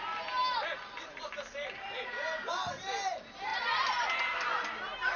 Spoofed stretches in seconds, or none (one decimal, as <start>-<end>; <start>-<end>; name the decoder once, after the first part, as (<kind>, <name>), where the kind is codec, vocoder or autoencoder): none